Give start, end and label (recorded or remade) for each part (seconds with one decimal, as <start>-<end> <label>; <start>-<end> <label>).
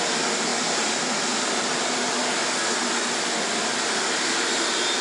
0.0-5.0 recorded